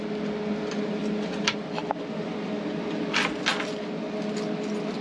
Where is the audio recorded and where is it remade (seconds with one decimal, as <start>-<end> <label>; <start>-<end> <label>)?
0.0-5.0 recorded